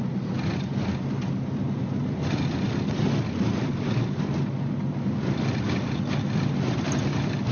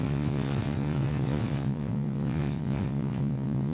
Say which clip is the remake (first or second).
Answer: second